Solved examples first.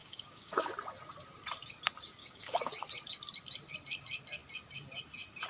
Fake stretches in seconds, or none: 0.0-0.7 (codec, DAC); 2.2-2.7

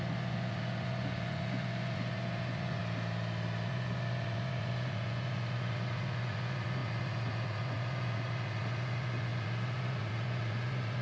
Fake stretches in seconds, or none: 0.0-2.8 (vocoder, Vocos); 3.7-11.0

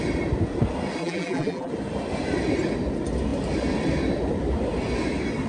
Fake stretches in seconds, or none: 1.0-1.7 (vocoder, BigVGAN v2)

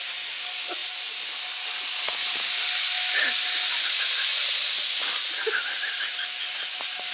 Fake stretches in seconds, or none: 4.3-6.0 (vocoder, BigVGAN v2)